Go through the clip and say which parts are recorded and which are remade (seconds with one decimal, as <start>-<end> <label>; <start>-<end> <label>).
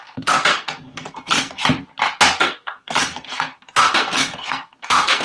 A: 0.0-1.6 remade; 1.6-2.4 recorded; 2.4-5.2 remade